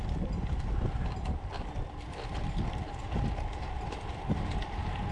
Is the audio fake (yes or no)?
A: no